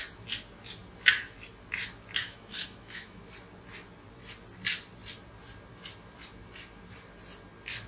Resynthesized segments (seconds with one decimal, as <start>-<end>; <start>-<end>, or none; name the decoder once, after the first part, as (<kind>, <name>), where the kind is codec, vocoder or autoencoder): 2.2-3.2 (autoencoder, DAC-VAE)